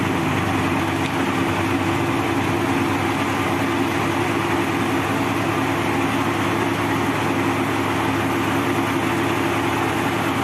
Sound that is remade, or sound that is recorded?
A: recorded